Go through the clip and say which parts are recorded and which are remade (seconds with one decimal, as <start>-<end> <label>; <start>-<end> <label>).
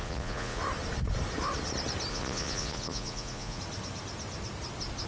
0.0-0.6 remade; 0.6-2.1 recorded; 2.1-3.6 remade; 3.6-5.1 recorded